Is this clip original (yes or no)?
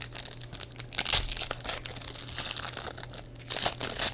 yes